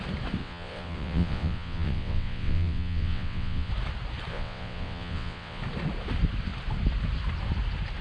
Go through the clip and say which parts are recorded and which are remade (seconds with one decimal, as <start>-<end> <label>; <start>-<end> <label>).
0.0-0.4 recorded; 0.4-3.7 remade; 3.7-4.3 recorded; 4.3-5.6 remade; 5.6-8.0 recorded